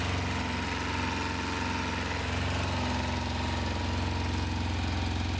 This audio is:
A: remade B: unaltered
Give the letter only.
B